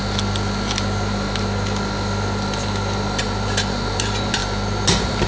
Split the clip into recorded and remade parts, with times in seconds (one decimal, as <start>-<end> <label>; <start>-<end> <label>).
0.0-3.2 recorded; 3.2-5.3 remade